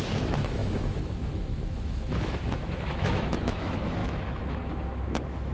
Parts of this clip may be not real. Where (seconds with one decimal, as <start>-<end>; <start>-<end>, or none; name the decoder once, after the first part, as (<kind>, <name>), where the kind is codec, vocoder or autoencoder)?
0.0-5.5 (autoencoder, DAC-VAE)